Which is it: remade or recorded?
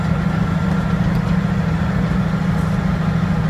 recorded